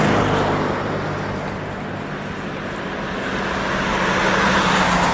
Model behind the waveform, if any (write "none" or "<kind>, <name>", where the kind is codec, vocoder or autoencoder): none